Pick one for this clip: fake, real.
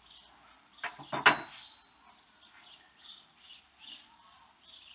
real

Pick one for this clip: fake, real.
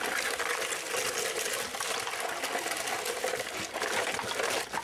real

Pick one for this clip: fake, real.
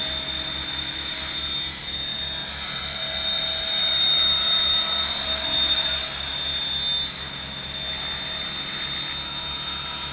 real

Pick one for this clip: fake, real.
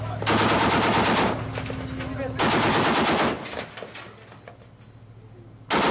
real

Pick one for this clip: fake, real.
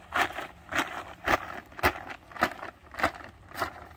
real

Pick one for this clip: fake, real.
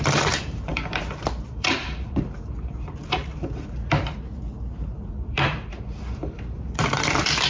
fake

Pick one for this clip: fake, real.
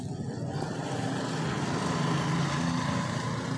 real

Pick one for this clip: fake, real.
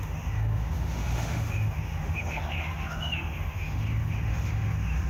fake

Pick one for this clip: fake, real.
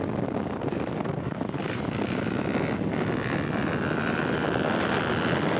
real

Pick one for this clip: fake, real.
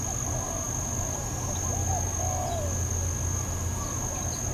real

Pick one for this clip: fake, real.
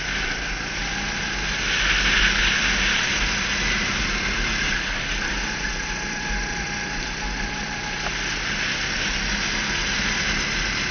real